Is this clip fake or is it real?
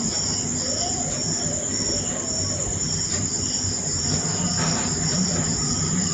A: fake